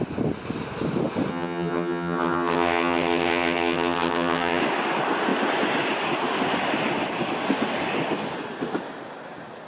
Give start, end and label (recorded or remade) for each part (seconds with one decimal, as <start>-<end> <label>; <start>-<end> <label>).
0.0-1.3 recorded; 1.3-4.6 remade; 4.6-9.7 recorded